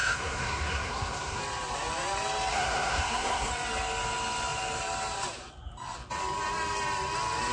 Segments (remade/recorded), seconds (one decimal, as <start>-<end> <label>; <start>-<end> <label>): 0.0-1.4 remade; 1.4-2.5 recorded; 2.5-3.5 remade; 3.5-7.5 recorded